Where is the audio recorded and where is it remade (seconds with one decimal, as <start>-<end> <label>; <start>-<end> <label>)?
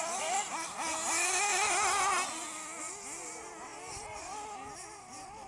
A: 0.0-5.5 recorded